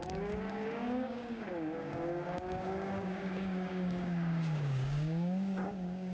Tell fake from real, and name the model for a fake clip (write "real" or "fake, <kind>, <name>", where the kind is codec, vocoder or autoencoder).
fake, codec, DAC